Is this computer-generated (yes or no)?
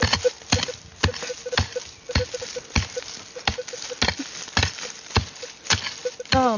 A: no